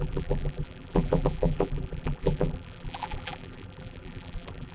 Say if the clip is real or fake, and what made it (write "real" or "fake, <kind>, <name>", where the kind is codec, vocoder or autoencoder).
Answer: fake, vocoder, BigVGAN v2